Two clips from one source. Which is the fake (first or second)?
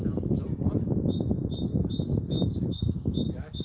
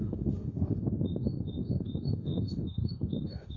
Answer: second